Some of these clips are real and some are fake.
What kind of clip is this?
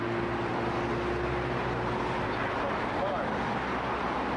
real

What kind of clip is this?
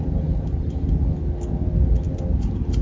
real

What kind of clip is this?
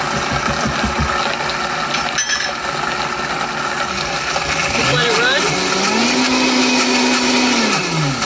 real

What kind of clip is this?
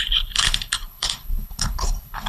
fake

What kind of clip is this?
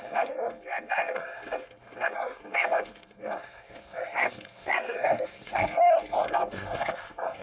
fake